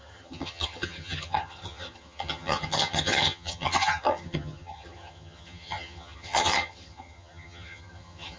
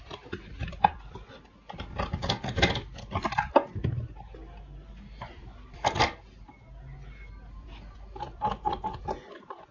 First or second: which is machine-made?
first